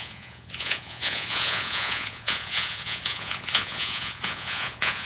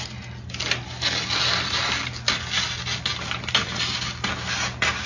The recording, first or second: second